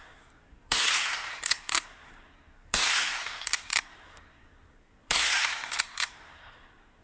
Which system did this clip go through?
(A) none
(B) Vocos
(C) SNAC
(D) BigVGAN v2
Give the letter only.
C